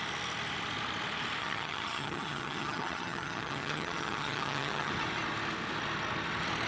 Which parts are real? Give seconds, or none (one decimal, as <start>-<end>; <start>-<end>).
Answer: 0.0-1.4; 4.9-6.7